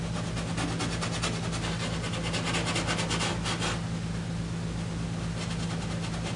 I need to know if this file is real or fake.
real